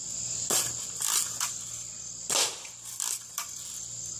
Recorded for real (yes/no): yes